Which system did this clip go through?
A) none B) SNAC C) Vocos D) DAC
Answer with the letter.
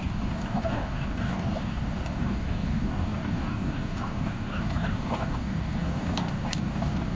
D